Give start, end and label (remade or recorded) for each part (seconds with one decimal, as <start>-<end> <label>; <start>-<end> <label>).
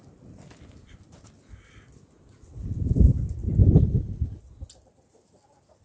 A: 0.0-3.6 recorded; 3.6-4.4 remade; 4.4-5.8 recorded